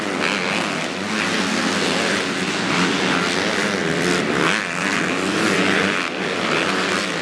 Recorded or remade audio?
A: recorded